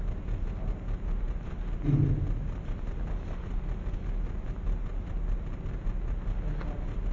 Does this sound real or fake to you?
real